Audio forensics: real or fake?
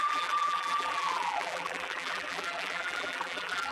fake